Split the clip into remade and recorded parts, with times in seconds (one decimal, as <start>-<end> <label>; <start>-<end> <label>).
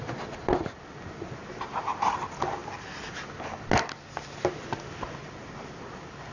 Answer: 0.0-6.3 recorded